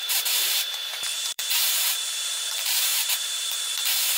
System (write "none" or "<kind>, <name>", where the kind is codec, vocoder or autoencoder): vocoder, BigVGAN v2